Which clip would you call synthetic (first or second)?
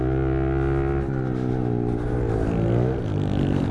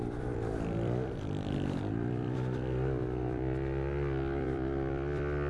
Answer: second